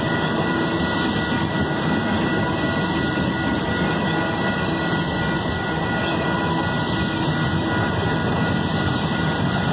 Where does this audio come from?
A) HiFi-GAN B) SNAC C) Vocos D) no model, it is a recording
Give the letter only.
D